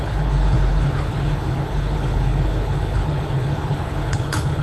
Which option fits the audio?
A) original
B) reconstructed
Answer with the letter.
B